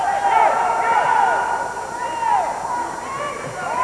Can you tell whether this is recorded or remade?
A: recorded